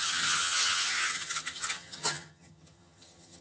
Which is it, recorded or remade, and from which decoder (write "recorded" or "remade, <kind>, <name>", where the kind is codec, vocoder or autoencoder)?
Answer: remade, vocoder, HiFi-GAN